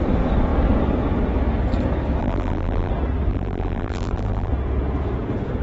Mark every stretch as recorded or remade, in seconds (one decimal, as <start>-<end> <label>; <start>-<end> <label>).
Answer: 0.0-2.2 recorded; 2.2-2.9 remade; 2.9-3.3 recorded; 3.3-4.5 remade; 4.5-5.6 recorded